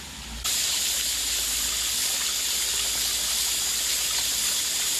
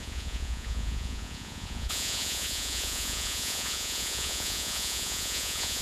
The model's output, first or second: second